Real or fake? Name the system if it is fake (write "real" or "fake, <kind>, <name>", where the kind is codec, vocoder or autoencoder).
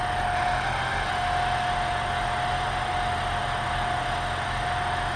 real